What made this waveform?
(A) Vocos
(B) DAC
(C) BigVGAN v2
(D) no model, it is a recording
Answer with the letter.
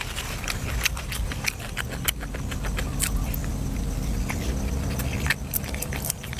D